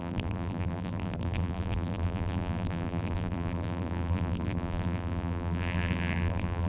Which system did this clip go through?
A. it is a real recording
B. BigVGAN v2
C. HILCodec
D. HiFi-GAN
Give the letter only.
B